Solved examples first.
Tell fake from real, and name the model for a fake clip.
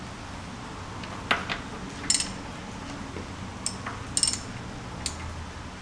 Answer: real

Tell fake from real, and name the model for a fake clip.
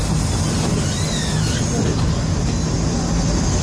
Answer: real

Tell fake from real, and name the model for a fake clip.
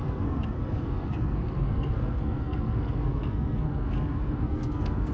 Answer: fake, codec, SNAC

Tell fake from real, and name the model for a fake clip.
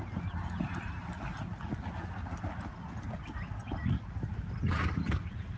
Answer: real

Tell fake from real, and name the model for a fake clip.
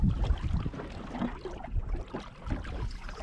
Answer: real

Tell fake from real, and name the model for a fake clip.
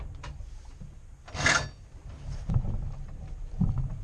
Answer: real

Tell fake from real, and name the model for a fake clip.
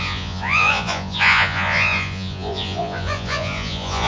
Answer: fake, vocoder, Vocos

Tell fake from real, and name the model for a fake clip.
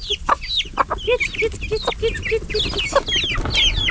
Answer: real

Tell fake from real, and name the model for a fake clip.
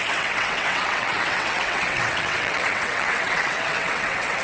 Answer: fake, vocoder, WaveNeXt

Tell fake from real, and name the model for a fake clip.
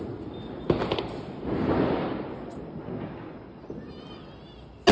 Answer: real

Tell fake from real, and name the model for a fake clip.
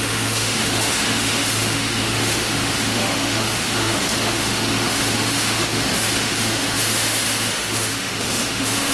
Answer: fake, autoencoder, DAC-VAE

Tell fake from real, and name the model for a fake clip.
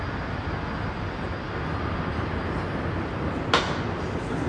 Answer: real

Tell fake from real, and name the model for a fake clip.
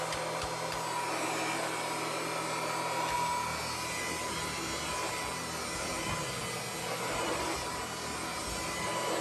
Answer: real